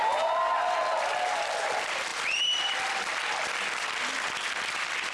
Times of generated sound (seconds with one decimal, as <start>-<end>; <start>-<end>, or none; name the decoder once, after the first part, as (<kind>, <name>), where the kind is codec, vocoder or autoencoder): 2.1-2.6 (vocoder, BigVGAN v2)